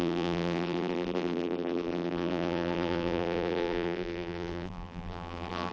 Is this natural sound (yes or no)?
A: no